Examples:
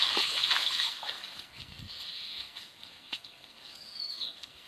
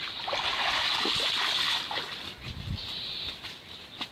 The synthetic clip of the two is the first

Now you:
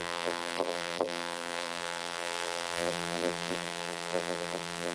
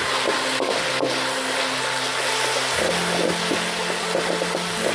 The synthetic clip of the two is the first